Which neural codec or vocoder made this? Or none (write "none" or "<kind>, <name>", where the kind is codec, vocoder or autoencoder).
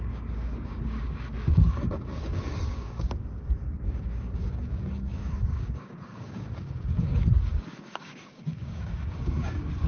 codec, DAC